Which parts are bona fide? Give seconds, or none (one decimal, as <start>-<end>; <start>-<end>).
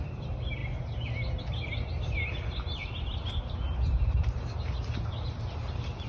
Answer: 0.0-6.1